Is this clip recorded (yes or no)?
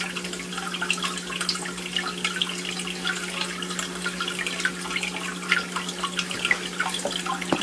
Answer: yes